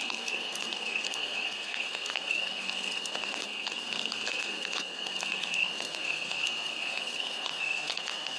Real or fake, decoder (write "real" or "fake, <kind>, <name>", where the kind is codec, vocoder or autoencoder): fake, codec, SNAC